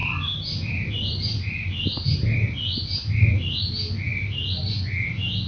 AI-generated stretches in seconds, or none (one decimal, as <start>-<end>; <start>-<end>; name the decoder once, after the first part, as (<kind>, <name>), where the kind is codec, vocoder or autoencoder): none